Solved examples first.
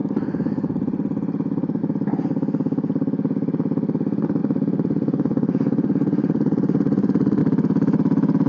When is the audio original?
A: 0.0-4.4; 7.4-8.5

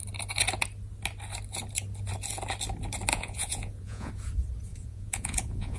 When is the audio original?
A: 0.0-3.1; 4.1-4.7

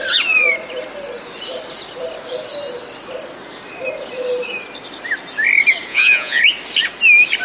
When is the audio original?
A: 0.0-5.9; 6.4-7.4

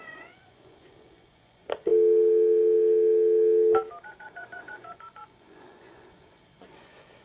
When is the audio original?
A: 1.9-4.0

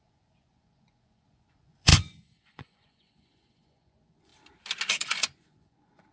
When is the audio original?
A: 4.3-5.0

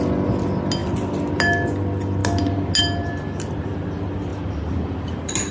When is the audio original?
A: 0.0-5.5